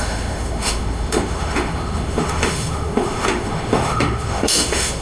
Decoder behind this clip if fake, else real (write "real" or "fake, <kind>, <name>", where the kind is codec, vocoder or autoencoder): fake, autoencoder, DAC-VAE